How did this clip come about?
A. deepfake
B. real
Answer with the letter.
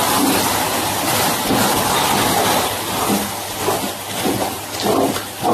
B